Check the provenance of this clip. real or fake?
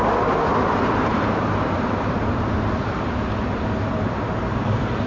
fake